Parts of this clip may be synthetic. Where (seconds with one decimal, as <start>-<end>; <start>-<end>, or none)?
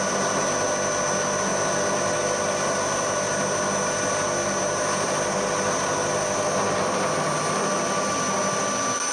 none